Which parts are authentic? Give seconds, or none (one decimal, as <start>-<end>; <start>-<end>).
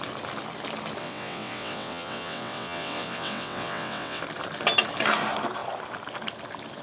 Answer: 0.0-1.0; 4.2-6.8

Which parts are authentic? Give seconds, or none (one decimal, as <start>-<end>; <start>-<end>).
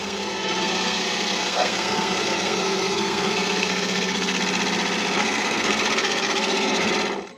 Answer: 4.4-5.2; 6.9-7.4